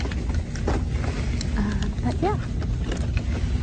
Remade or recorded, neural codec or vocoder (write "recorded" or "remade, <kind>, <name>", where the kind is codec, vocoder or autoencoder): recorded